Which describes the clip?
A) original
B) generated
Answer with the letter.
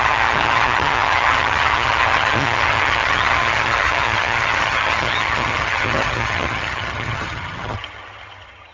B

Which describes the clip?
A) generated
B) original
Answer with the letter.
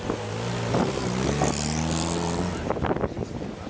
B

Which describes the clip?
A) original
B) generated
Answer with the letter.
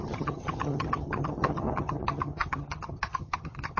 B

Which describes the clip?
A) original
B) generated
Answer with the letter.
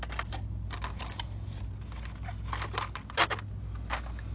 A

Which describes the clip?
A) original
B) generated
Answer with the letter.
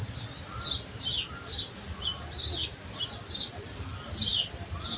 A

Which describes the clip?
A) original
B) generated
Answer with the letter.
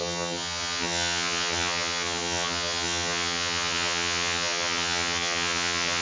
B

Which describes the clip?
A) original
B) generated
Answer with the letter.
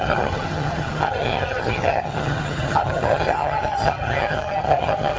B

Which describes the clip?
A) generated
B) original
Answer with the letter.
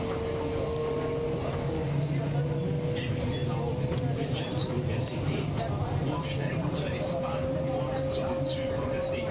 B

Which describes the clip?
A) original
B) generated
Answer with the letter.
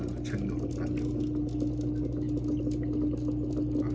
A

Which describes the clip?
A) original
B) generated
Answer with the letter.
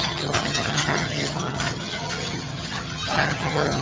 B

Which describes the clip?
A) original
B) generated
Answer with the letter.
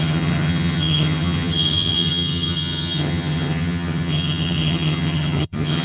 B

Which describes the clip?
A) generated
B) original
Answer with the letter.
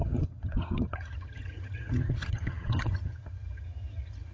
A